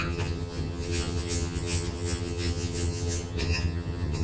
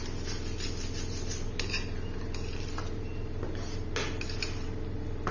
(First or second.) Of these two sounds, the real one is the second